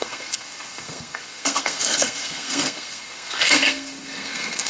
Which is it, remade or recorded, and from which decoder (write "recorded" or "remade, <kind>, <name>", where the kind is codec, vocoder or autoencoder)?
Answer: remade, codec, SNAC